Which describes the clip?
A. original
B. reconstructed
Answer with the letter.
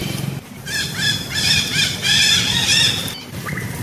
A